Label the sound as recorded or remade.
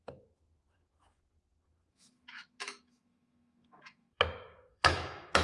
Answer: remade